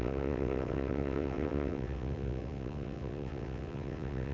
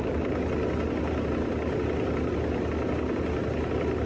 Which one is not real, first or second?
first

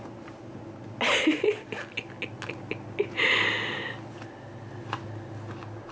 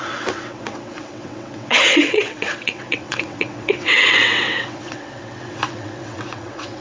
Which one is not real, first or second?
second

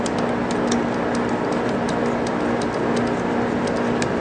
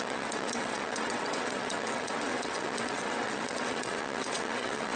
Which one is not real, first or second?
second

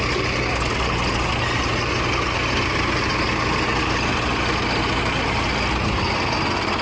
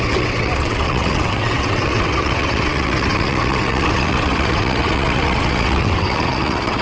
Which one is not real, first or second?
second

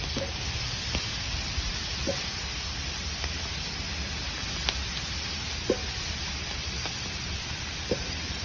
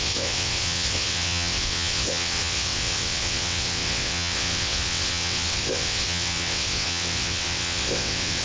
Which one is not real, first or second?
second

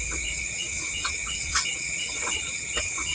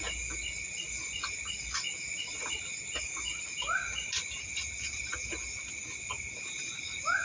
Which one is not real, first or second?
first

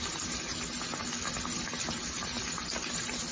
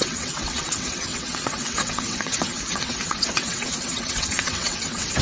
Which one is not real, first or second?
second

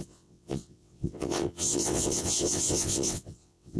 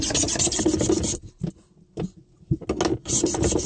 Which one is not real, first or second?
first